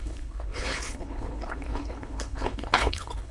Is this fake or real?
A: fake